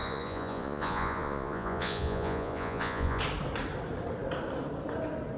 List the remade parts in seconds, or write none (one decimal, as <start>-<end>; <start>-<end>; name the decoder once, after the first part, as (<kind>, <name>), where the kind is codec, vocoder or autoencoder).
0.0-3.2 (vocoder, Vocos)